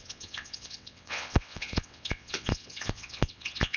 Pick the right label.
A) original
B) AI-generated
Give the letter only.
B